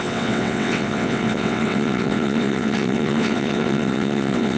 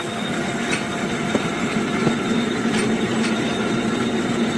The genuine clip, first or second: second